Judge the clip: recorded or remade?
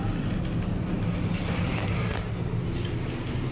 recorded